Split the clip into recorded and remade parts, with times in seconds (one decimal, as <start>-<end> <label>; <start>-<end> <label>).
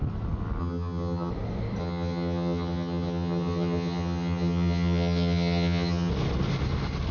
0.0-0.6 recorded; 0.6-1.3 remade; 1.3-1.8 recorded; 1.8-6.1 remade; 6.1-7.1 recorded